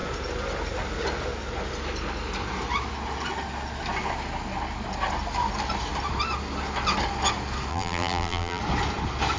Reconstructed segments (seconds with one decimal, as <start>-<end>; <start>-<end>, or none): 7.7-8.6